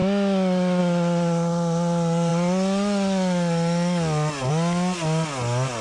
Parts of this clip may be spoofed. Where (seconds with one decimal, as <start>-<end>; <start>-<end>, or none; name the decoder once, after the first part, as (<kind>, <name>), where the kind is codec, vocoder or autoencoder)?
none